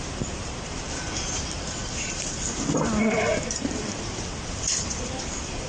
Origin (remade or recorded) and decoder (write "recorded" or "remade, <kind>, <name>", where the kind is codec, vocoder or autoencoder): remade, vocoder, BigVGAN v2